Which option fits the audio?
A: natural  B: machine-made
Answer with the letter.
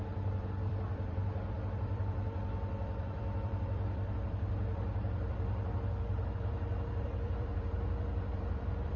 B